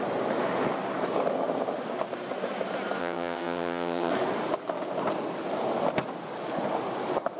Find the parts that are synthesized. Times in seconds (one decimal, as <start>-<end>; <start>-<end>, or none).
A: 3.0-4.1

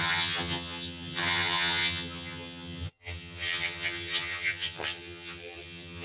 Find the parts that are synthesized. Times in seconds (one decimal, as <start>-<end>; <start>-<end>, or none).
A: 0.0-6.0

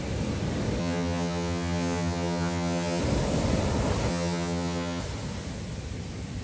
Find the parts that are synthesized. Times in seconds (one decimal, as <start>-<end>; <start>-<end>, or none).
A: 0.8-3.0; 4.1-5.0

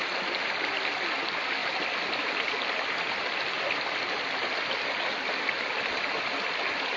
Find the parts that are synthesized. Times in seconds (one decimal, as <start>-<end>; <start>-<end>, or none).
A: none

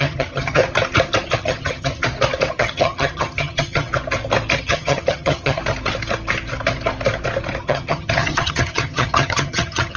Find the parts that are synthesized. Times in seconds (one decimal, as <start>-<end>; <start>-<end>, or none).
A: 0.0-0.6; 1.4-2.0; 2.5-3.9; 4.6-5.6; 7.6-10.0

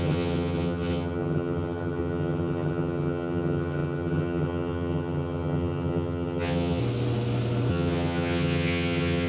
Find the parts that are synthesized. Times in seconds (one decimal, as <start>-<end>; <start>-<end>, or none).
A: 0.0-6.8; 7.7-9.3